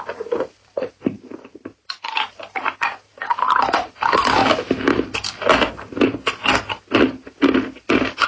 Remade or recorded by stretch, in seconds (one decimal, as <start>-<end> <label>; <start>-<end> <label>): 0.0-4.4 remade; 4.4-7.9 recorded; 7.9-8.3 remade